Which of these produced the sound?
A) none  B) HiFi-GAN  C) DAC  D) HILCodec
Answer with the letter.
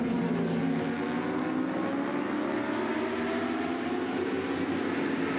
A